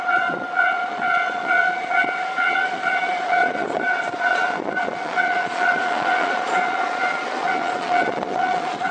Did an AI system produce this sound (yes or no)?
yes